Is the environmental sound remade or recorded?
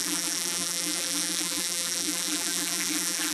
remade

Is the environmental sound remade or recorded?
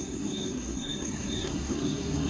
remade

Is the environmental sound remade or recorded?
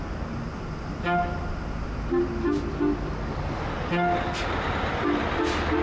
recorded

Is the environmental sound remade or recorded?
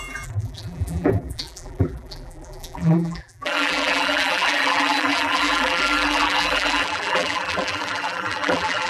remade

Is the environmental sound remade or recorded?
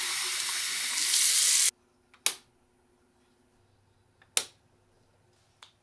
recorded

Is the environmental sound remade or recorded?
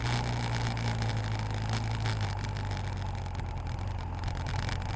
recorded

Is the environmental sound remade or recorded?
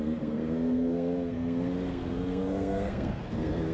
remade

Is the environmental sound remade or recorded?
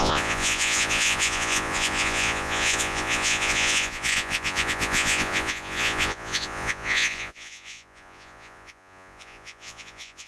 remade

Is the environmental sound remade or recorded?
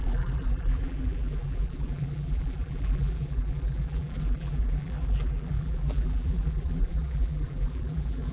remade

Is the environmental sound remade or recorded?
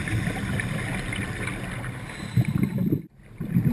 recorded